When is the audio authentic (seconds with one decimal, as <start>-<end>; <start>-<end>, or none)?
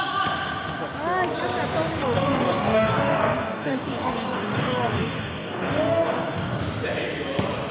0.0-2.0; 6.6-7.7